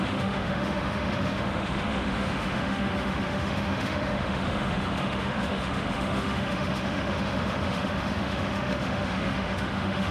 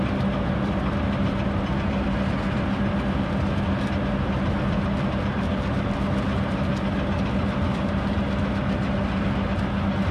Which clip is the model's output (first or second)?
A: first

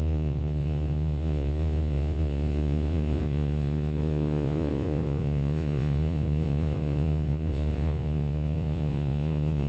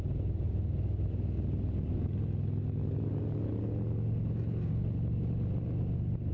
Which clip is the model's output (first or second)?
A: first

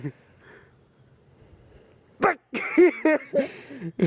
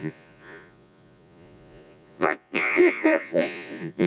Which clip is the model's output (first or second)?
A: second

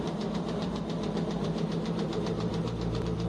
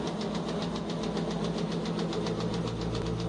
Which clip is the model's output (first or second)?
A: first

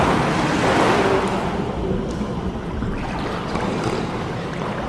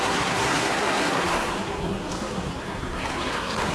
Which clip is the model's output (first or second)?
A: second